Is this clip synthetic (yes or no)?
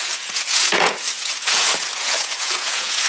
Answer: yes